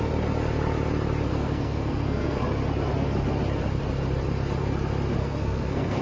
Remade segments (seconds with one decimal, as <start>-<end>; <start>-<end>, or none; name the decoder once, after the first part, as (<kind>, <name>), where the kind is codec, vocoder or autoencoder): 1.3-2.4 (codec, SNAC); 5.2-6.0